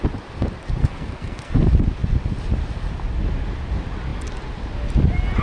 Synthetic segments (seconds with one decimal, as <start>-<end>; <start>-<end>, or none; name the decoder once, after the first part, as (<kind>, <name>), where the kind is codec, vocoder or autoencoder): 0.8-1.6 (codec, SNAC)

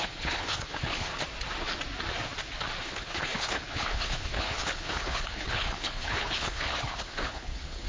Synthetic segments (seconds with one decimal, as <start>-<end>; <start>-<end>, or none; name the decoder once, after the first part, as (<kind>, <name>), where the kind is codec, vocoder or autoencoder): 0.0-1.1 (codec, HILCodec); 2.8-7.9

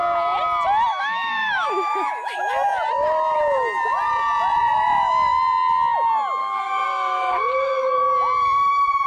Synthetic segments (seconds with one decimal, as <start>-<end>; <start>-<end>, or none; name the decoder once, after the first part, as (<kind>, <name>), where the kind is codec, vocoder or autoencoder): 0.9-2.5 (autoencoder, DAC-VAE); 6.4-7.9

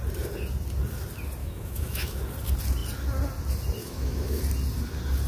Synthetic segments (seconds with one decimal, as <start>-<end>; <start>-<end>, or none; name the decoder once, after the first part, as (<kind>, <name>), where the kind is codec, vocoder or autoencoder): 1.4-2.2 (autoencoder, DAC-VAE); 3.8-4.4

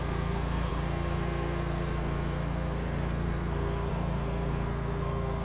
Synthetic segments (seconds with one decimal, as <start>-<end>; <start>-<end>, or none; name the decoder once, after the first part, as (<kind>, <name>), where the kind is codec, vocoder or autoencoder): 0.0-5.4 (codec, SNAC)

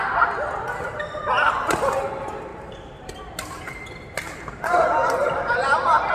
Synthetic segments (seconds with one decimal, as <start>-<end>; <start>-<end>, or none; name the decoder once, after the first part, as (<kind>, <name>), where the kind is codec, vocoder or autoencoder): 2.5-3.2 (vocoder, BigVGAN v2); 5.2-6.1

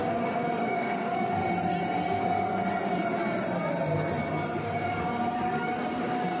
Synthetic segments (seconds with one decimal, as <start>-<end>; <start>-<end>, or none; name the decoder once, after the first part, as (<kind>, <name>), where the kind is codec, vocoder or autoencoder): 0.0-1.4 (codec, DAC); 4.6-6.4

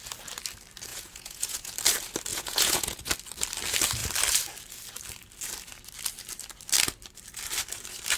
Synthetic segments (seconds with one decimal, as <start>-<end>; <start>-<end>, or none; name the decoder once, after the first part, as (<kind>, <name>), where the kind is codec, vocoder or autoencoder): 0.9-1.7 (vocoder, Vocos); 2.3-3.1